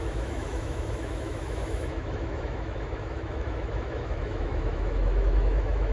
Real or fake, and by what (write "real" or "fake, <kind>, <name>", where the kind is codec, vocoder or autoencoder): fake, autoencoder, DAC-VAE